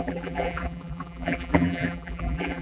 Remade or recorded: remade